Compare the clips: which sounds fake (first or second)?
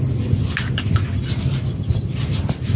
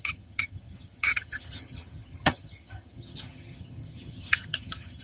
second